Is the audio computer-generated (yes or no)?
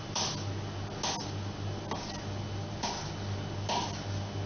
no